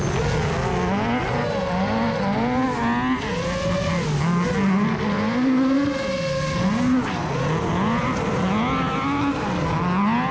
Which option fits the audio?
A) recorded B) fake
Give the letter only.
A